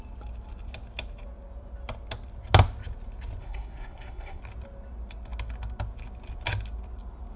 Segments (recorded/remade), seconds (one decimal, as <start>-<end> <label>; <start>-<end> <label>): 0.0-3.4 recorded; 3.4-4.4 remade; 4.4-7.4 recorded